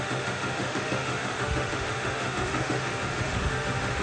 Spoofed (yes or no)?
yes